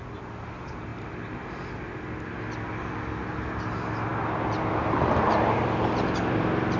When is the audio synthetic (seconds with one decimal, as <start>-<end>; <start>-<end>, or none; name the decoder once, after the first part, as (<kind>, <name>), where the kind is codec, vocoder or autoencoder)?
none